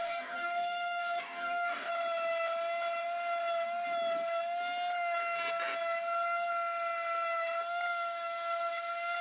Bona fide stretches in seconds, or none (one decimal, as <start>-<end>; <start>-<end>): 1.9-9.2